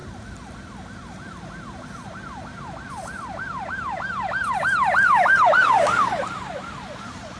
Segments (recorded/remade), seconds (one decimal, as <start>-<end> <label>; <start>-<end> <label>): 0.0-7.4 recorded